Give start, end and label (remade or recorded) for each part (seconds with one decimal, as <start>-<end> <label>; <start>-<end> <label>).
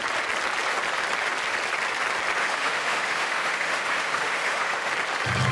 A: 0.0-2.4 recorded; 2.4-4.9 remade; 4.9-5.5 recorded